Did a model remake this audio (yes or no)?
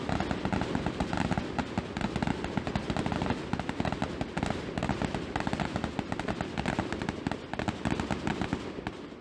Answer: no